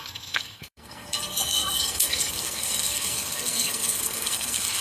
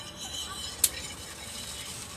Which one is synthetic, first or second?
first